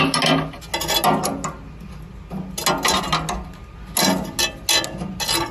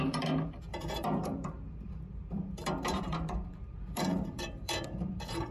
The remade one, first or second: second